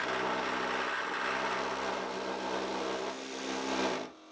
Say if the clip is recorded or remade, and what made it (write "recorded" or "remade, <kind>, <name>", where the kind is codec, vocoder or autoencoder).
recorded